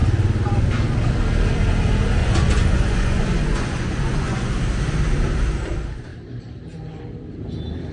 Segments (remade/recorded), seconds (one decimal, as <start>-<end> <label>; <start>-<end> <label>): 0.0-2.2 recorded; 2.2-4.5 remade; 4.5-7.9 recorded